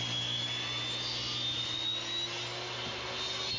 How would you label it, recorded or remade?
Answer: recorded